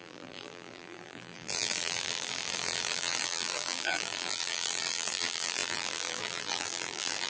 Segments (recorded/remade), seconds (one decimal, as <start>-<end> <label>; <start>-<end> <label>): 0.0-7.3 remade